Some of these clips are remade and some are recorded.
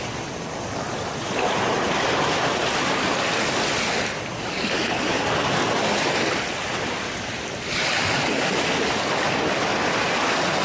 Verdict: remade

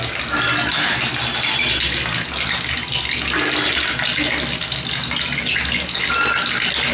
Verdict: recorded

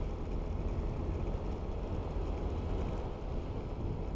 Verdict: recorded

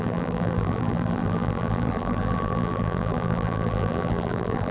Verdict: remade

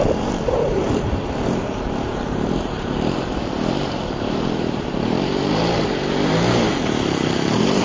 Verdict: remade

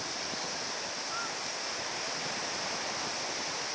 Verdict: recorded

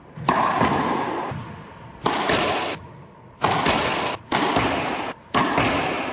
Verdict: recorded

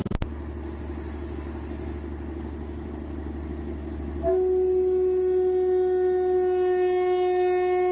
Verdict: recorded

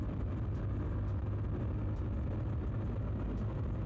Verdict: recorded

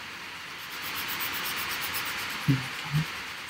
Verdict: remade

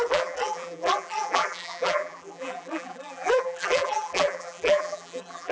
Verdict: remade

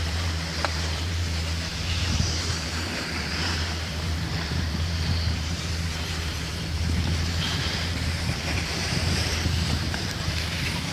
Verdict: remade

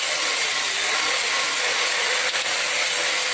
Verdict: recorded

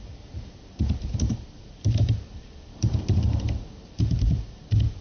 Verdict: remade